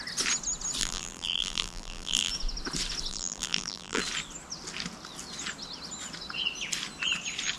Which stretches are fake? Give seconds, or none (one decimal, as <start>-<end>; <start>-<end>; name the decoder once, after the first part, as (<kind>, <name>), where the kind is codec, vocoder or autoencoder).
0.8-2.3 (vocoder, BigVGAN v2); 3.1-4.0